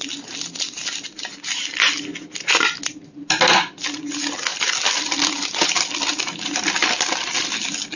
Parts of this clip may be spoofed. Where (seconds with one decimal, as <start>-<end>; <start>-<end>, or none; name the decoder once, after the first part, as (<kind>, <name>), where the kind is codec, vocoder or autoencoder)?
none